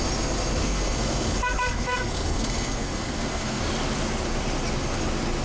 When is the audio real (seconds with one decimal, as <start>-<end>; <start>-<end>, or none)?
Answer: 0.0-0.6; 3.6-5.4